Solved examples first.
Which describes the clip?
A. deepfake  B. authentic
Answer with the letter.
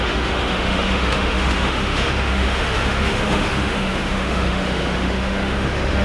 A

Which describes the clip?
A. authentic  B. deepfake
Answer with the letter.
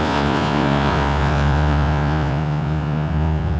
B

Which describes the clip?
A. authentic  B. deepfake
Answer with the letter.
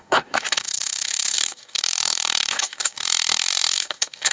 B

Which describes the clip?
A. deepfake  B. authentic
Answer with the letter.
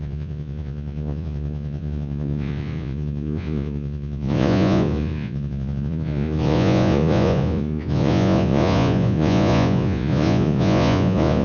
A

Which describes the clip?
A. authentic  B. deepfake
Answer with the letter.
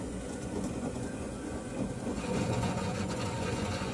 B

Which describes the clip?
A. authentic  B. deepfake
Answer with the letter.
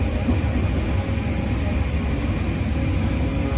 A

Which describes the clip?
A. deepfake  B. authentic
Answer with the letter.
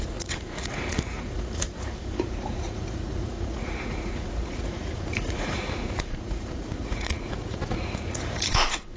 A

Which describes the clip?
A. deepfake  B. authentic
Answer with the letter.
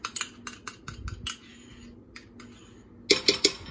B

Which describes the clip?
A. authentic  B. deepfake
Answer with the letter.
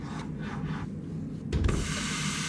A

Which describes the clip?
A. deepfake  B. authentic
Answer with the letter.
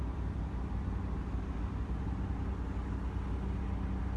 B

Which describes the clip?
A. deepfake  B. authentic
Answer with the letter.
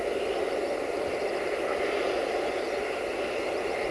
B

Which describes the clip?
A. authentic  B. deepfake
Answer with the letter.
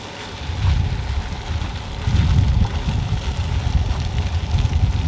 A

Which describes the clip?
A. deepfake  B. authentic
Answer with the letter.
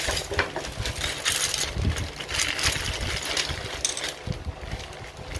B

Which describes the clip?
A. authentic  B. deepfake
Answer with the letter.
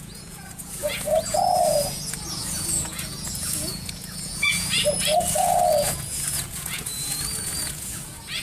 B